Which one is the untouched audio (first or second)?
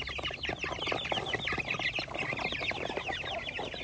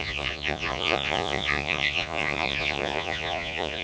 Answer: first